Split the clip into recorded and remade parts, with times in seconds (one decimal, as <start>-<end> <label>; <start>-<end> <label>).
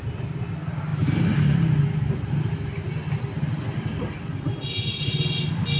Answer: 0.0-5.8 recorded